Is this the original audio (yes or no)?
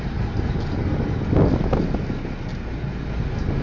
yes